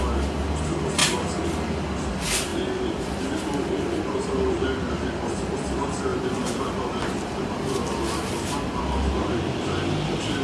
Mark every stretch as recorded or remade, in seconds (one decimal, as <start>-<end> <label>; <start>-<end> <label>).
0.0-2.5 recorded; 2.5-3.2 remade; 3.2-6.1 recorded; 6.1-8.8 remade; 8.8-10.4 recorded